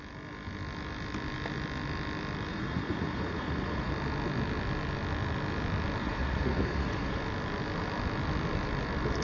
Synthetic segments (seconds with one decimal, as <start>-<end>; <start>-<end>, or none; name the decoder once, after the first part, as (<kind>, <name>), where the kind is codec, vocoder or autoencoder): 2.5-3.9 (vocoder, Vocos); 6.0-7.2